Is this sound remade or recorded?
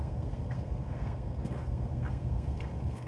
remade